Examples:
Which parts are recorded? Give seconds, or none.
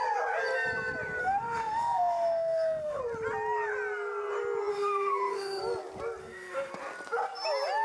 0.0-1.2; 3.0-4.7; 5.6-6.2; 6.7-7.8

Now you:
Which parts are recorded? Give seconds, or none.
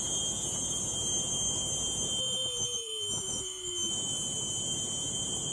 0.0-2.2; 3.9-5.5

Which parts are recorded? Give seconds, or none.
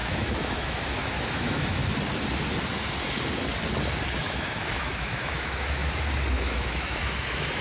1.8-4.2; 5.8-6.3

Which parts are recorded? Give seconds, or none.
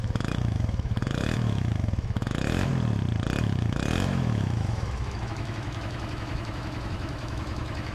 2.7-3.4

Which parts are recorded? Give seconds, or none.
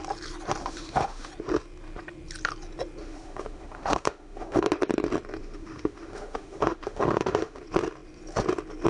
0.0-0.6; 1.3-3.0; 4.7-5.4; 7.6-8.9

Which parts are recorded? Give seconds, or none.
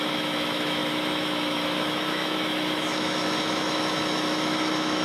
none